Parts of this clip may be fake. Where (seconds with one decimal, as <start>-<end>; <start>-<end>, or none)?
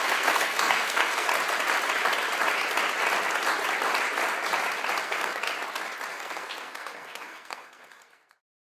0.0-1.3; 5.0-5.5; 6.1-8.7